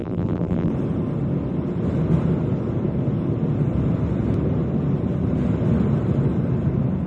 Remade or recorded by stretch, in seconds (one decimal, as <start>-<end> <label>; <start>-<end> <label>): 0.0-0.7 remade; 0.7-7.1 recorded